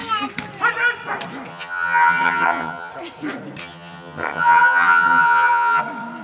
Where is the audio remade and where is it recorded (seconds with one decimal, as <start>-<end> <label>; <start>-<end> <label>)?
0.0-1.5 recorded; 1.5-2.9 remade; 2.9-3.6 recorded; 3.6-5.8 remade; 5.8-6.2 recorded